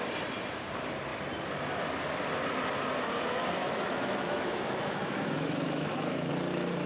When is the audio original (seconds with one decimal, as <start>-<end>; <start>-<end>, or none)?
0.0-3.6; 6.3-6.9